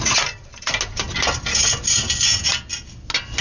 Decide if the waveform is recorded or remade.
recorded